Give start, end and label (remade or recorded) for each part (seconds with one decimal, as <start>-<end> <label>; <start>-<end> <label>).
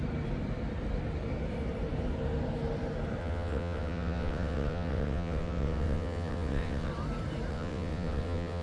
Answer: 0.0-3.2 recorded; 3.2-6.9 remade; 6.9-7.5 recorded; 7.5-8.6 remade